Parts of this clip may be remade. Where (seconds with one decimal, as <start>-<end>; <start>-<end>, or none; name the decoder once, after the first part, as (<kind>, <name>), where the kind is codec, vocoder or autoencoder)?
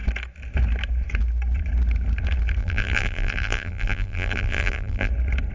2.6-5.1 (vocoder, BigVGAN v2)